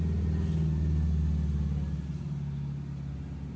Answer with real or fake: real